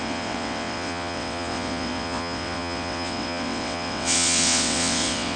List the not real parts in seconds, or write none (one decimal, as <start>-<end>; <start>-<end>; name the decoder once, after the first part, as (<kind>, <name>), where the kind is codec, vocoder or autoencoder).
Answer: 0.0-5.4 (vocoder, WaveNeXt)